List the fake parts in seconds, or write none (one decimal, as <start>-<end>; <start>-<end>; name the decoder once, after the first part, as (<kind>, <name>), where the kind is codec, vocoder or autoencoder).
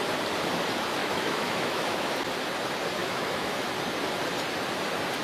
1.0-2.1 (autoencoder, DAC-VAE); 3.0-3.6